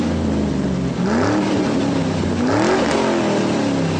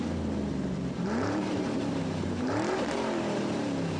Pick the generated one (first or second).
second